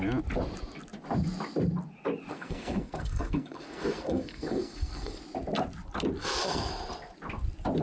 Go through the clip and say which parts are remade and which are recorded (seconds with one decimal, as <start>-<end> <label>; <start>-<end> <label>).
0.0-2.3 recorded; 2.3-5.2 remade; 5.2-6.2 recorded; 6.2-6.7 remade; 6.7-7.8 recorded